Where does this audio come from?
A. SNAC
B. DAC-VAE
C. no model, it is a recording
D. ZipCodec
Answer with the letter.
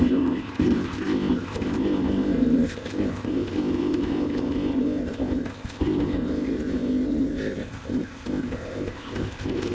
D